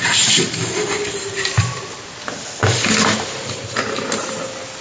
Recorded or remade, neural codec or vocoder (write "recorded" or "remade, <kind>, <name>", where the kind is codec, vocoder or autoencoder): recorded